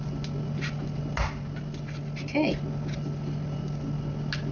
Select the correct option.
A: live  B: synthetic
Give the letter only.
A